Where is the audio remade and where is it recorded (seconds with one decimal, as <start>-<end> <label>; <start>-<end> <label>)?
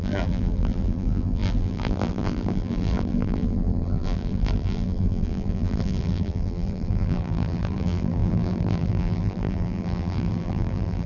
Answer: 0.0-11.1 remade